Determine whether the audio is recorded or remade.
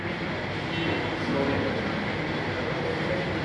recorded